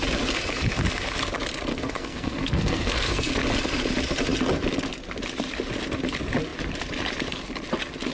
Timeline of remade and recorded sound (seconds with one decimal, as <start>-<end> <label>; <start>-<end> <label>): 0.0-1.7 recorded; 1.7-3.3 remade; 3.3-8.1 recorded